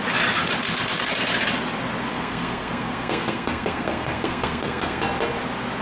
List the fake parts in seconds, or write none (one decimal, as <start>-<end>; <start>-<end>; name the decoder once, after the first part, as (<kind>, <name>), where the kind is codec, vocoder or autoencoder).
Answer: 2.1-5.0 (codec, SNAC)